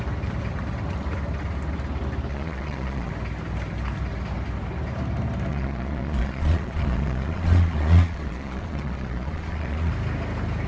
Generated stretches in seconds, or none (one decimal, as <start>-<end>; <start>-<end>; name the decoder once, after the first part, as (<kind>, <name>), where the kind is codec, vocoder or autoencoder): 2.3-3.1 (vocoder, Vocos); 5.5-9.9